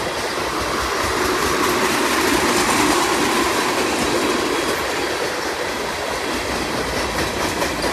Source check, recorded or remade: recorded